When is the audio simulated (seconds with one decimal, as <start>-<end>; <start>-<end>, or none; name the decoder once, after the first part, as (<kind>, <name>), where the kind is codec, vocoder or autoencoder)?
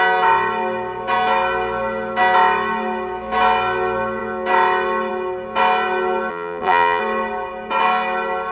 6.3-7.0 (vocoder, BigVGAN v2)